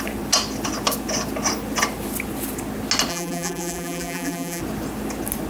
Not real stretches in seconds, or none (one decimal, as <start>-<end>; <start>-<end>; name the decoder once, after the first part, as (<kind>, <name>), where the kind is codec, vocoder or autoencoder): 3.1-4.6 (vocoder, BigVGAN v2)

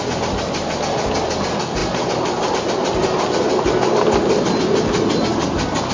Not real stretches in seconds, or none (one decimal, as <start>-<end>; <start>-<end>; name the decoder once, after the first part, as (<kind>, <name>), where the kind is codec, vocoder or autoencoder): 1.8-2.5 (vocoder, BigVGAN v2)

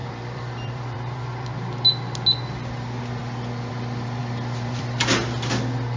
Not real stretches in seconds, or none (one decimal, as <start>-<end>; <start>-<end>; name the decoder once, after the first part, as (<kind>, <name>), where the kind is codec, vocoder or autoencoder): 0.0-1.6 (vocoder, BigVGAN v2); 4.2-5.1

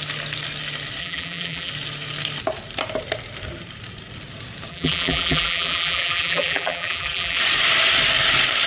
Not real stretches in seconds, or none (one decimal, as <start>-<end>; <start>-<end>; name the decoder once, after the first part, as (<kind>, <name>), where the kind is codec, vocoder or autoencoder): 1.0-1.7 (vocoder, BigVGAN v2); 4.7-7.4

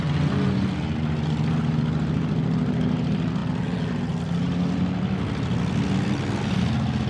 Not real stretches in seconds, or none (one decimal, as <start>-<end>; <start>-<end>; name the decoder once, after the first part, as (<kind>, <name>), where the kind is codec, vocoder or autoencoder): none

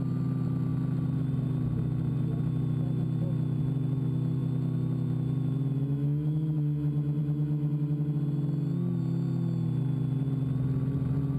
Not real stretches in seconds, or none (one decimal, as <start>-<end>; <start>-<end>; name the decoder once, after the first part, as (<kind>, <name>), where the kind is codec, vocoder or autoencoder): none